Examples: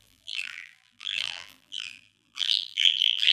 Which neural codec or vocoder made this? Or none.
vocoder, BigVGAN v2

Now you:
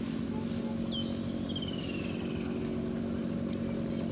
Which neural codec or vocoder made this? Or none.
none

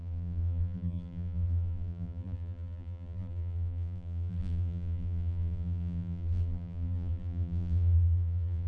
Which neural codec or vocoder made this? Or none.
vocoder, BigVGAN v2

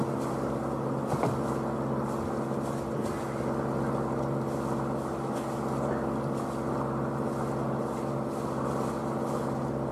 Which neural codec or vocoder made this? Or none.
none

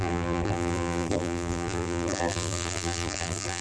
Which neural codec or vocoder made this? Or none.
vocoder, BigVGAN v2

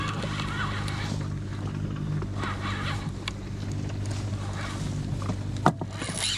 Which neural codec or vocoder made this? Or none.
none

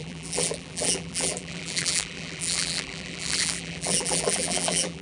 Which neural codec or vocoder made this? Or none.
vocoder, BigVGAN v2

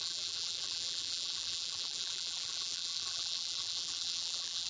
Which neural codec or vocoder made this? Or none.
vocoder, BigVGAN v2